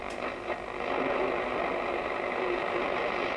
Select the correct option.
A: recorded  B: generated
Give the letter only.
A